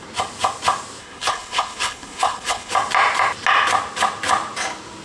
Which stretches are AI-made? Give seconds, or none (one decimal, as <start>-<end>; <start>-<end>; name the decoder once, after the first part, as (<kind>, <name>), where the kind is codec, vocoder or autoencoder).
1.0-2.7 (codec, HILCodec)